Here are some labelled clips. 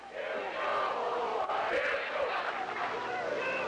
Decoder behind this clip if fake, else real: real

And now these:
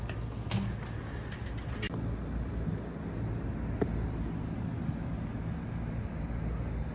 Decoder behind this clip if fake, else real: real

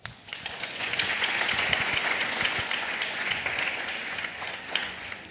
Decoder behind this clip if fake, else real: fake, vocoder, Vocos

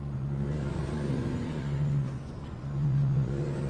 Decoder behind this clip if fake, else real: fake, vocoder, Vocos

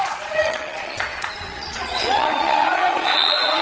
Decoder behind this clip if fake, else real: fake, vocoder, Vocos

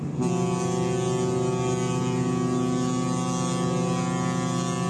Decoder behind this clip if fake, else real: real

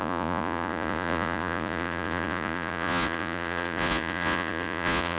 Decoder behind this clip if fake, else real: fake, vocoder, Vocos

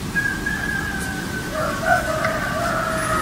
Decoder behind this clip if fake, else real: real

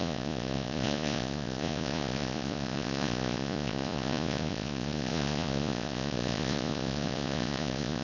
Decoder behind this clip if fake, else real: fake, vocoder, Vocos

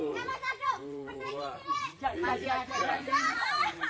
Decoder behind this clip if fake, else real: fake, vocoder, Vocos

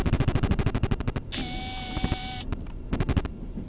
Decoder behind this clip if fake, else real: real